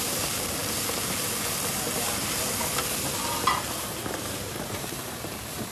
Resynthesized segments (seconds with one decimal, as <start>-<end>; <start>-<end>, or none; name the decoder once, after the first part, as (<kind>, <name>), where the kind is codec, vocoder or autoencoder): 0.0-0.6 (vocoder, BigVGAN v2); 3.7-5.7